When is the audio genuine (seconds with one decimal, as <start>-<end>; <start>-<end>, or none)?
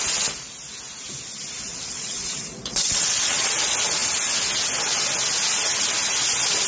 0.0-1.7; 3.5-6.7